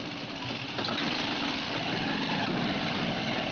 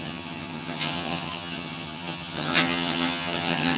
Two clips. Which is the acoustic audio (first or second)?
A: first